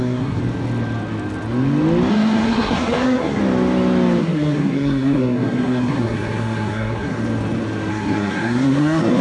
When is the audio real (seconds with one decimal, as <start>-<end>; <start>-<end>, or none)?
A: 0.4-2.1; 3.4-4.2; 7.2-7.9